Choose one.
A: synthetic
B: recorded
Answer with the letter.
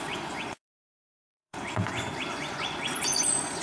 A